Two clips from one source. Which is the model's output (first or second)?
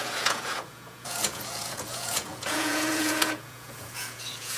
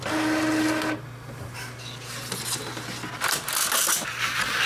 first